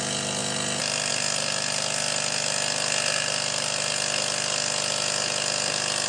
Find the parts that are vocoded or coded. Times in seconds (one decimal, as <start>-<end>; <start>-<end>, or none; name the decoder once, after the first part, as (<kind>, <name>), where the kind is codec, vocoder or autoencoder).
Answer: none